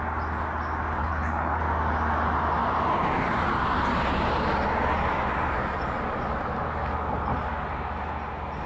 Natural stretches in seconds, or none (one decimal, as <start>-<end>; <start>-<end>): 0.0-1.0; 1.6-8.7

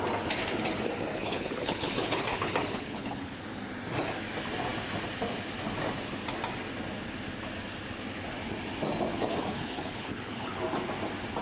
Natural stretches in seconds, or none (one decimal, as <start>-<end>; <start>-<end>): 0.0-1.1; 3.4-9.1; 10.6-11.4

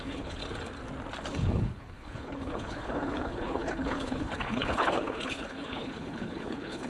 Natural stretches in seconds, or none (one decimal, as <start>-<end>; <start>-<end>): 0.4-1.3

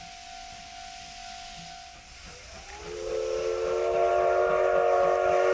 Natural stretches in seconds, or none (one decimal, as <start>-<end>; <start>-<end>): 0.0-5.5

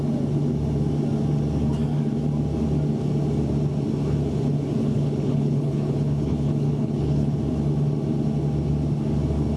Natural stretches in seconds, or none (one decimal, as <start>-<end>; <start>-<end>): 0.0-4.8; 7.4-9.6

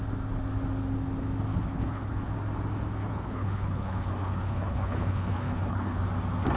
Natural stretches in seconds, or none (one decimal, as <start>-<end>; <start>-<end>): 0.0-1.5; 2.3-3.0; 6.0-6.6